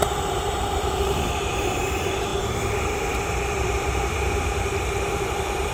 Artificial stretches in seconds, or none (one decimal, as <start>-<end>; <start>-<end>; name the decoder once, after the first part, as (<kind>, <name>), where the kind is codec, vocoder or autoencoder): 0.0-5.7 (vocoder, BigVGAN v2)